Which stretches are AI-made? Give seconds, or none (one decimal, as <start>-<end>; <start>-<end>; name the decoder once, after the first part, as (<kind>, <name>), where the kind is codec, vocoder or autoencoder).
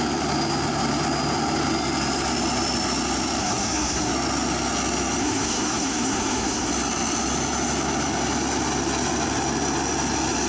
3.4-4.1 (codec, SNAC); 5.2-6.7